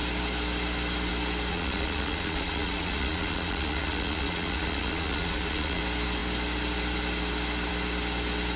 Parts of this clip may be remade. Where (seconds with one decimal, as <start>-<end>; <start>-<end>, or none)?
1.5-5.8